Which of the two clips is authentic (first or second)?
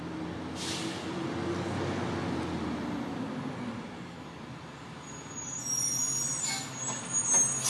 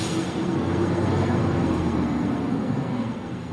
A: first